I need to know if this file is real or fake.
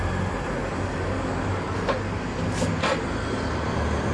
real